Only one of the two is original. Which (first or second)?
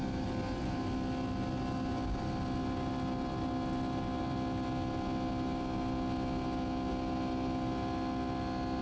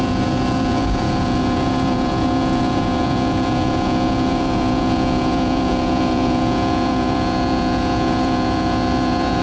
first